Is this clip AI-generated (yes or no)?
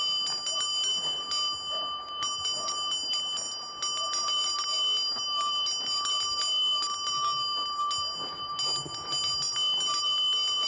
no